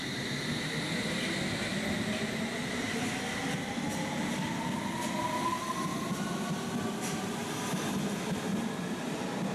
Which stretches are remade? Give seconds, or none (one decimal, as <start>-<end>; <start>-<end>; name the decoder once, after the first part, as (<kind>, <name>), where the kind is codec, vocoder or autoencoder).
1.7-3.0 (vocoder, BigVGAN v2)

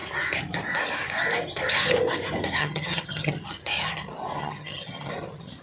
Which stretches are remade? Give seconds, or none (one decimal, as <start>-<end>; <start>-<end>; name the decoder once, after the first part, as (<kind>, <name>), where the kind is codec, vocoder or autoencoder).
2.6-3.3 (vocoder, HiFi-GAN); 4.4-5.1

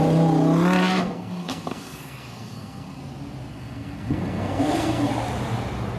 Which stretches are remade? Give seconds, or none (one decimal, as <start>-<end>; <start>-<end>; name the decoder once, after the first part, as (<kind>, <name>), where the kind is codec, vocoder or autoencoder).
0.8-3.0 (codec, SNAC); 3.5-5.1

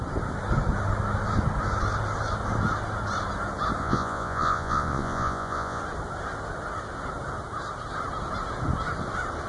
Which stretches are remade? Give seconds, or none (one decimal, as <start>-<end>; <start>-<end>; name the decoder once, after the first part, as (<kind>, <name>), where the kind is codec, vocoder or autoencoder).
3.8-5.8 (vocoder, Vocos)